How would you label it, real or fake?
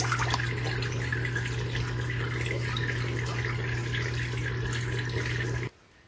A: real